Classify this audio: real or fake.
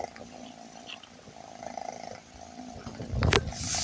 real